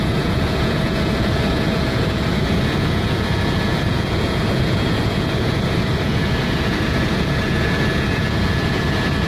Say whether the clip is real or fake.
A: fake